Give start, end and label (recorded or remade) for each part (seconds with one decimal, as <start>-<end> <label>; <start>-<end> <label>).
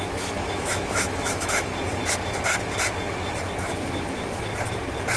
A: 0.0-1.7 remade; 1.7-3.6 recorded; 3.6-4.5 remade; 4.5-5.2 recorded